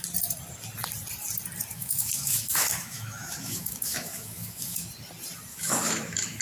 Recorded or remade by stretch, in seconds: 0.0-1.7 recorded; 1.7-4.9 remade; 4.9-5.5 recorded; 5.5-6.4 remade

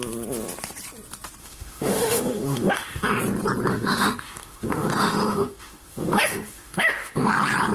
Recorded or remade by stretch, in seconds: 0.0-1.4 recorded; 1.4-3.2 remade; 3.2-3.7 recorded; 3.7-7.3 remade; 7.3-7.7 recorded

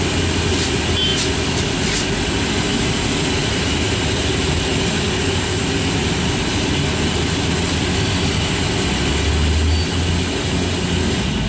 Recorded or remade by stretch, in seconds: 0.0-11.5 recorded

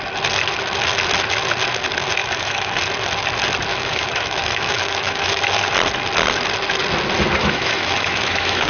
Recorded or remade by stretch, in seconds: 0.0-2.2 recorded; 2.2-2.8 remade; 2.8-3.7 recorded; 3.7-5.4 remade; 5.4-7.4 recorded; 7.4-8.7 remade

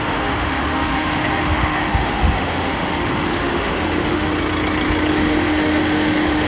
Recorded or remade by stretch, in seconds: 0.0-4.3 remade; 4.3-5.1 recorded; 5.1-6.5 remade

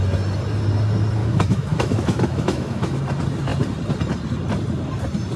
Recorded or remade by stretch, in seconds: 0.0-1.2 recorded; 1.2-3.0 remade; 3.0-5.4 recorded